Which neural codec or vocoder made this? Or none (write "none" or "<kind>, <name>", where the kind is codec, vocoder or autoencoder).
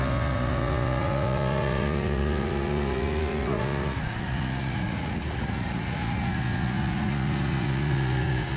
vocoder, Vocos